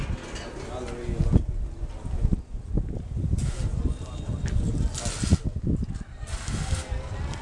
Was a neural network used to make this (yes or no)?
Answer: no